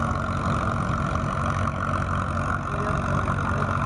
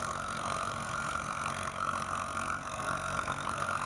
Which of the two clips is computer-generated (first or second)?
second